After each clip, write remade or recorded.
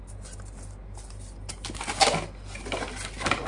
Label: recorded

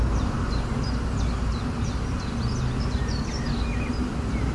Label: recorded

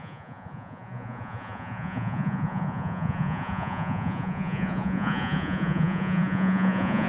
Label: remade